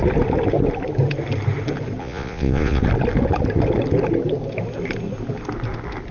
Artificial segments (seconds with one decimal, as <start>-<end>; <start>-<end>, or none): 2.0-2.8